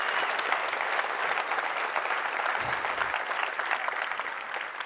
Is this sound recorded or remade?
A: recorded